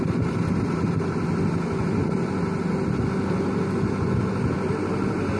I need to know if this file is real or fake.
real